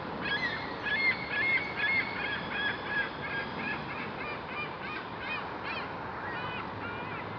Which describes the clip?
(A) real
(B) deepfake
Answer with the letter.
A